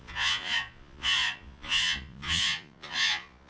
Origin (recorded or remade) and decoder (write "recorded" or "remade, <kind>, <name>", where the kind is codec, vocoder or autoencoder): remade, vocoder, Vocos